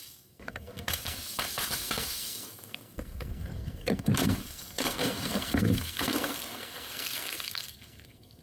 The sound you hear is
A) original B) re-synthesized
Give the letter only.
B